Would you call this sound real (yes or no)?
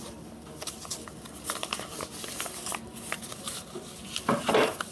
yes